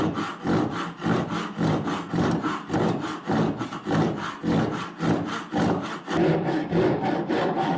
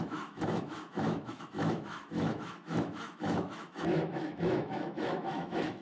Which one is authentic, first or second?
first